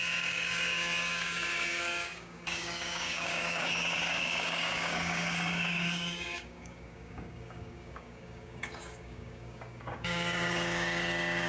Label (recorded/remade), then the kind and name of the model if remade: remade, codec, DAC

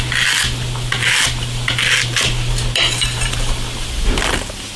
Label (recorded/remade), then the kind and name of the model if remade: recorded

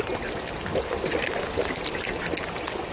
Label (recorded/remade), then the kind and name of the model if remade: recorded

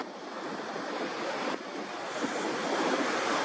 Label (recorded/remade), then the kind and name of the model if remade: recorded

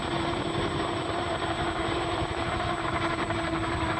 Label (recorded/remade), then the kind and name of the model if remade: remade, vocoder, BigVGAN v2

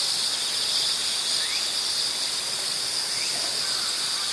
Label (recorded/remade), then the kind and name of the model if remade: recorded